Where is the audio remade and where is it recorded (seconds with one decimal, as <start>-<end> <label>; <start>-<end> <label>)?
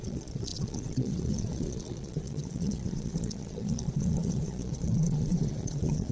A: 0.0-6.1 remade